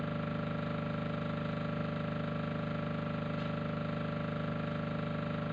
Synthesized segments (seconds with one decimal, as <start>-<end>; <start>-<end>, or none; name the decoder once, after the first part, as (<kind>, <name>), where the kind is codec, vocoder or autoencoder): none